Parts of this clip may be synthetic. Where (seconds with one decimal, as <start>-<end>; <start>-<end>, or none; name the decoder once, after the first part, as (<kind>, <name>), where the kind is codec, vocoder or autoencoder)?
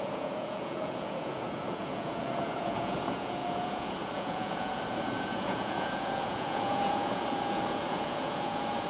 0.0-8.9 (vocoder, Vocos)